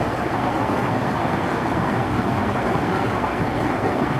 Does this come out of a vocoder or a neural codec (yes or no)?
yes